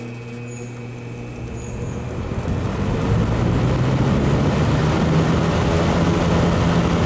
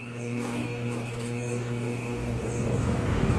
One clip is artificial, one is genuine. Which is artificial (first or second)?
second